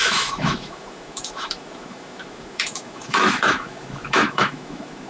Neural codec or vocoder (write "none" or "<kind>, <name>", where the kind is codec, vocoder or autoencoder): autoencoder, DAC-VAE